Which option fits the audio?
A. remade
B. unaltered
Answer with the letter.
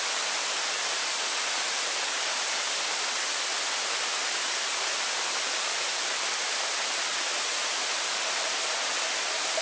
B